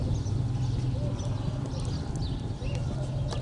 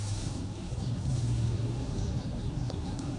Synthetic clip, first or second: second